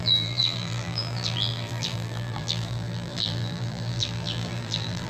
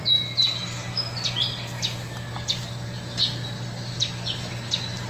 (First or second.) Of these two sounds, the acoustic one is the second